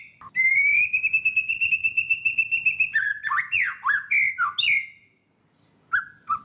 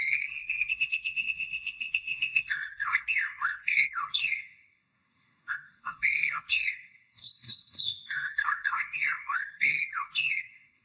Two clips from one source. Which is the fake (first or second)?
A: second